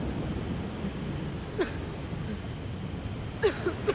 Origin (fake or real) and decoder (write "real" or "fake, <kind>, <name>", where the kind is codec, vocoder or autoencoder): real